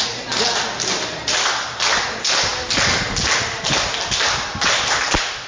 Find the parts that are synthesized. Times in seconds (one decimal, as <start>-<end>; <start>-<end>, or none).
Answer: none